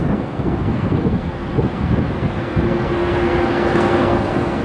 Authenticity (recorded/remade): remade